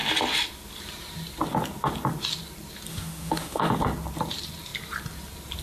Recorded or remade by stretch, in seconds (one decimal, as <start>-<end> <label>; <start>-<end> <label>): 0.0-2.9 recorded; 2.9-3.7 remade; 3.7-5.6 recorded